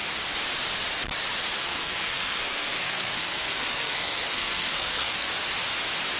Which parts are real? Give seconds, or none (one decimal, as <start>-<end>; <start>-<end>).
0.0-1.6; 5.3-6.2